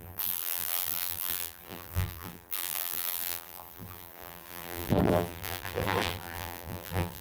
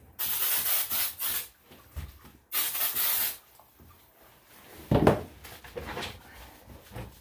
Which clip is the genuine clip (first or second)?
second